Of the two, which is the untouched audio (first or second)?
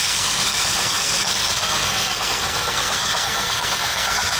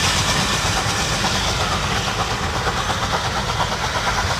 second